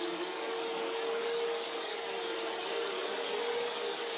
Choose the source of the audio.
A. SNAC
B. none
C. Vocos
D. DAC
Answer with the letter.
D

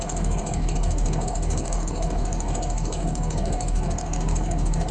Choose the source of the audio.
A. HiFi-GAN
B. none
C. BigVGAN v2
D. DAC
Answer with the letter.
D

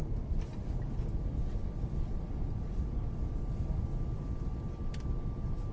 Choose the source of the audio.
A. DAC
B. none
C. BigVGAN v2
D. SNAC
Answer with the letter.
B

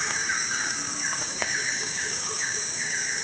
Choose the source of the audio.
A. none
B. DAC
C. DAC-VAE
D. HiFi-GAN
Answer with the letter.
B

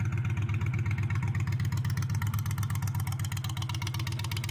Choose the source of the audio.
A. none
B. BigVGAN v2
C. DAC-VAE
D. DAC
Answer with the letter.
A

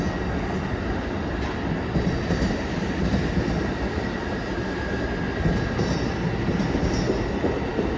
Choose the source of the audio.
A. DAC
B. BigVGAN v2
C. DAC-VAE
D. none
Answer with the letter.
D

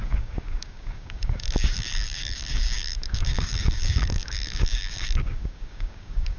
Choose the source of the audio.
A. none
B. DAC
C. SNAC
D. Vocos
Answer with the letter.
B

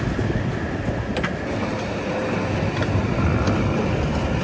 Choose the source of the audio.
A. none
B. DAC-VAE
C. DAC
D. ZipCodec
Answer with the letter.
A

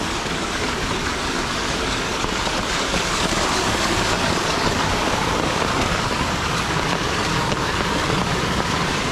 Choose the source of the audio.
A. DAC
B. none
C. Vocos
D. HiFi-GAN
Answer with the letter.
A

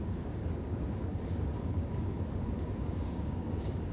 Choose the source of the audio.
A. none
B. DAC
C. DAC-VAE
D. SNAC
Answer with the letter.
B